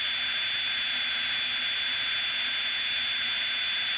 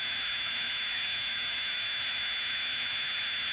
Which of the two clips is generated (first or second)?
second